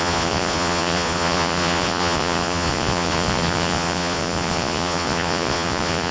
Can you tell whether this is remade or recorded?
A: remade